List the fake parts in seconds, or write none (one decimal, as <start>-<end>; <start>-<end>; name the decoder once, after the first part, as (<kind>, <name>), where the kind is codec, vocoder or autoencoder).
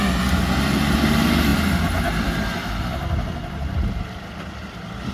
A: none